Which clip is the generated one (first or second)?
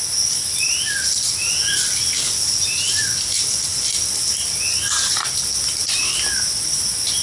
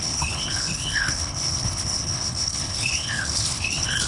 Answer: second